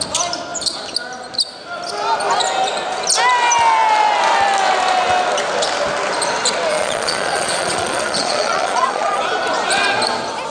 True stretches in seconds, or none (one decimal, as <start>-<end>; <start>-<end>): 0.0-6.7; 9.2-10.5